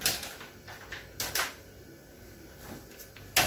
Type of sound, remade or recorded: recorded